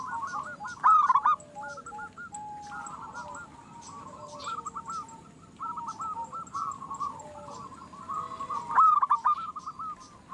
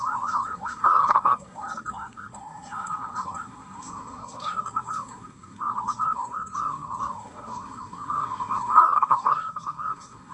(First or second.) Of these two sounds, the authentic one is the first